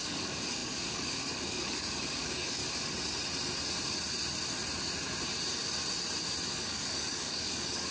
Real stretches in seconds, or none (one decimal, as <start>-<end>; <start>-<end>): 2.6-6.5